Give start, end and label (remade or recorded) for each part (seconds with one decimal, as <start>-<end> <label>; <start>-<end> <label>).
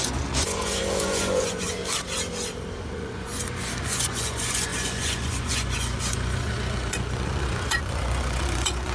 0.0-1.8 remade; 1.8-2.8 recorded; 2.8-3.3 remade; 3.3-3.8 recorded; 3.8-8.9 remade